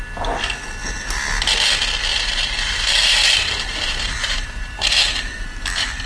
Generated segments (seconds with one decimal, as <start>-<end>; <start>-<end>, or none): 2.1-6.1